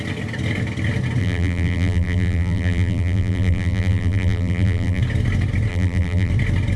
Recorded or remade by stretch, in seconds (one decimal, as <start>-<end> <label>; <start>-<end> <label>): 0.0-1.2 recorded; 1.2-5.0 remade; 5.0-5.7 recorded; 5.7-6.3 remade; 6.3-6.8 recorded